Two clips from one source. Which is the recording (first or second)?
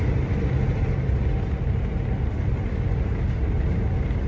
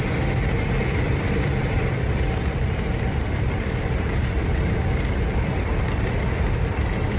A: first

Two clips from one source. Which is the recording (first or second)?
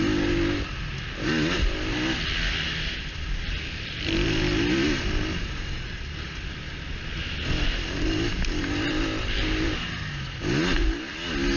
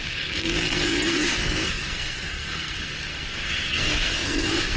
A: first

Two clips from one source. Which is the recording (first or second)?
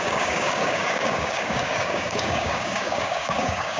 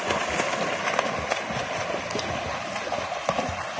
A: second